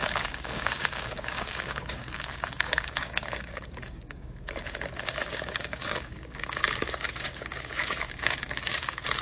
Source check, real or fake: fake